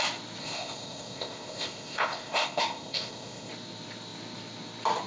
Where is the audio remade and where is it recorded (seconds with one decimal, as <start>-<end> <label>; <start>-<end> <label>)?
0.0-0.4 recorded; 0.4-3.5 remade; 3.5-5.1 recorded